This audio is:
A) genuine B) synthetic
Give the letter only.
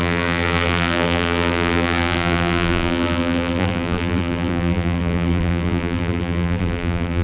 B